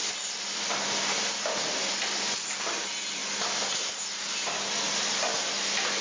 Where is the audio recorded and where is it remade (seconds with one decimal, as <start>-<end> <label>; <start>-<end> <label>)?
0.0-1.8 recorded; 1.8-2.6 remade; 2.6-6.0 recorded